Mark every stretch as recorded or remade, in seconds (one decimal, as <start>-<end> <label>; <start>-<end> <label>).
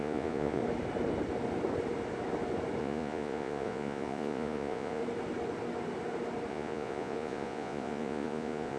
0.0-0.6 remade; 0.6-2.8 recorded; 2.8-5.0 remade; 5.0-6.5 recorded; 6.5-8.8 remade